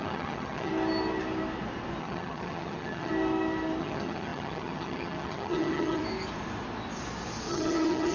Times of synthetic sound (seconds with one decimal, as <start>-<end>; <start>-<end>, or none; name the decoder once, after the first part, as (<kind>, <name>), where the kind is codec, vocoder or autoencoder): 0.0-0.7 (vocoder, HiFi-GAN); 2.0-3.1; 3.8-6.0; 7.5-8.1